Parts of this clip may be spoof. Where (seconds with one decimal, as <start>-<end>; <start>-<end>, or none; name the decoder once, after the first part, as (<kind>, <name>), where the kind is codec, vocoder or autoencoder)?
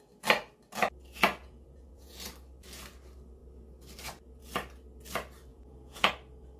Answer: 1.4-2.3 (vocoder, Vocos); 5.5-6.1